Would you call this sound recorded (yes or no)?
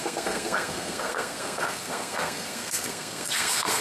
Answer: no